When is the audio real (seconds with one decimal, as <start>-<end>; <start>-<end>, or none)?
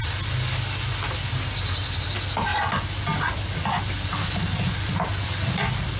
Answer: 0.0-6.0